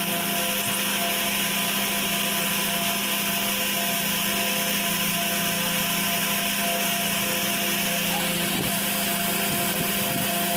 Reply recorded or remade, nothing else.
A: recorded